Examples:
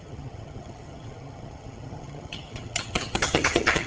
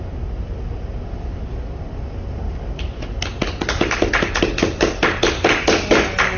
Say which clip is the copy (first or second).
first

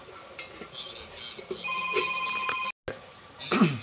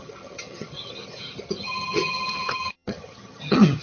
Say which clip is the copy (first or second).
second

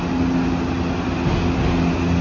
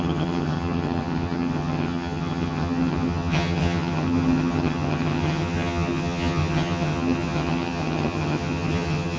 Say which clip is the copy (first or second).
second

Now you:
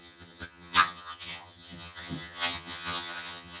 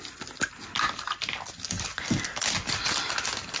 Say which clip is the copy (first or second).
first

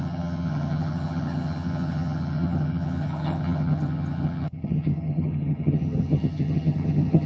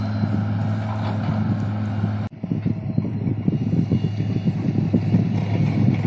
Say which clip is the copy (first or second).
first